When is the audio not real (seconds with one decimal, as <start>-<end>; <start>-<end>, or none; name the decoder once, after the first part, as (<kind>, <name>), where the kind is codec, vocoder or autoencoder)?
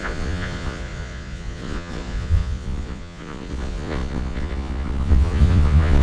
0.0-6.0 (vocoder, Vocos)